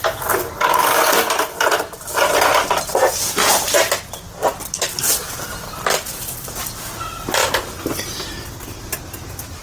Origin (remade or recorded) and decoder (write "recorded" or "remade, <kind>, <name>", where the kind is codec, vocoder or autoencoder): recorded